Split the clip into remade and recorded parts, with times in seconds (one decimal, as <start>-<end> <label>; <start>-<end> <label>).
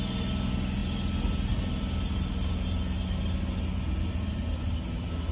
0.0-5.3 recorded